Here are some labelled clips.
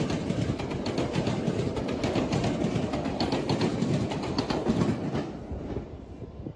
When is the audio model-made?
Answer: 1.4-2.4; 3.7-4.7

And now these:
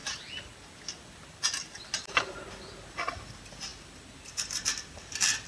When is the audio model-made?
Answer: none

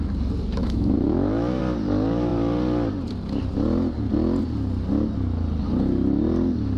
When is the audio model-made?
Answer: 0.6-1.6

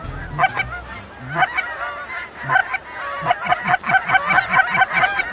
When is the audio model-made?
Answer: 2.6-4.1

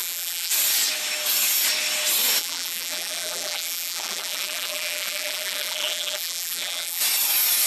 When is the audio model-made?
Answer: 0.0-0.5; 2.4-7.0

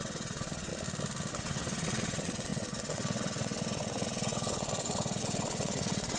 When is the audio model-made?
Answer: 0.0-0.7; 1.3-6.2